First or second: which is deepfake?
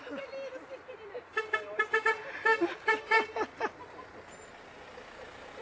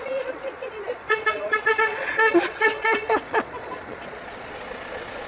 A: second